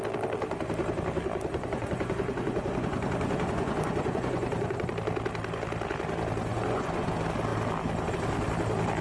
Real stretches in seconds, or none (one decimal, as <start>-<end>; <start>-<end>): 0.0-1.5; 4.9-6.5; 7.1-9.0